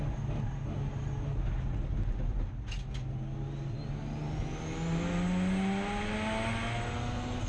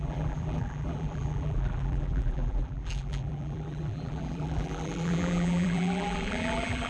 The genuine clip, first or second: first